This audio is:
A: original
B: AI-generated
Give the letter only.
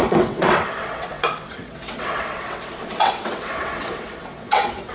B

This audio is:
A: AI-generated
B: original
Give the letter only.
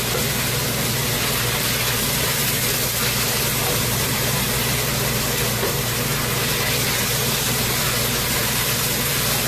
B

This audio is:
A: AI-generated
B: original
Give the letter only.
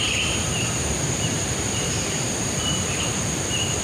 A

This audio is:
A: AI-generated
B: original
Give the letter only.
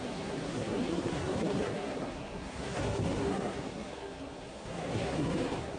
A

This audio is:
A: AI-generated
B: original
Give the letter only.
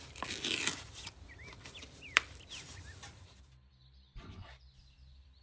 A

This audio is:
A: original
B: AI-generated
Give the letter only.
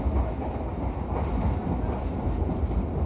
A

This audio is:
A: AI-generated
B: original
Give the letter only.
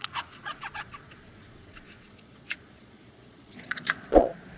A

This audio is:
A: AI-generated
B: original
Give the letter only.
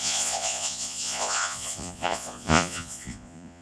A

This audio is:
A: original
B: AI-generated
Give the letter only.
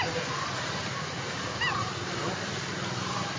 A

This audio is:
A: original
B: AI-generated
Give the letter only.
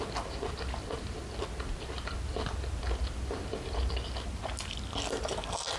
A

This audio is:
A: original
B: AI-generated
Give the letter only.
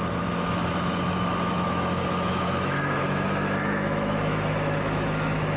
B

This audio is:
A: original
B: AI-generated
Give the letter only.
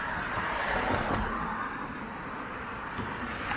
B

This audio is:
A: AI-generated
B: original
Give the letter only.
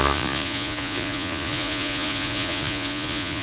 A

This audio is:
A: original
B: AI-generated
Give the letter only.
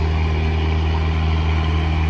A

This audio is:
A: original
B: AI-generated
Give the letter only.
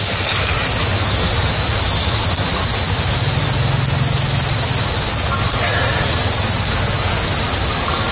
A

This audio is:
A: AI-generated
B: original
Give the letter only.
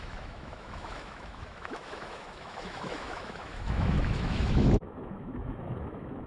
A